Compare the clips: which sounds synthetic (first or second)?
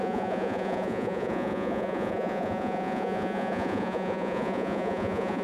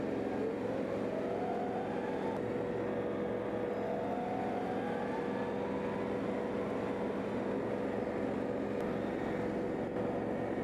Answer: first